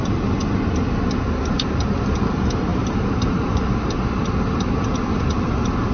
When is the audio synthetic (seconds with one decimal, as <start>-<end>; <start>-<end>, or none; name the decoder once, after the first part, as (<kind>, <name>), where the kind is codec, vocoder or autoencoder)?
2.7-3.6 (vocoder, BigVGAN v2)